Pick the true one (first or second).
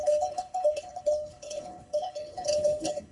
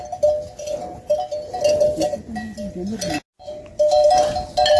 second